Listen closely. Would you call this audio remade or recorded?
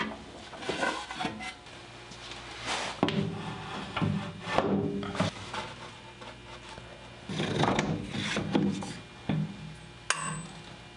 recorded